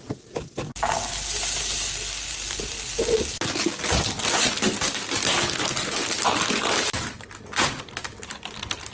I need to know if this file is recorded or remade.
recorded